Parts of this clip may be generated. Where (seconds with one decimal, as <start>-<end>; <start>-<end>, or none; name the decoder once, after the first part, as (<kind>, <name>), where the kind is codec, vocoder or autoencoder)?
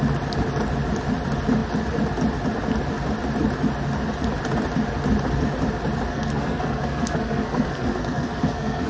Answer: 6.1-8.9 (codec, SNAC)